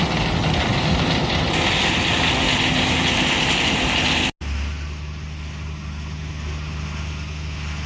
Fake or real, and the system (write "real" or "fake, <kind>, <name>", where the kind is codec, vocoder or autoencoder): real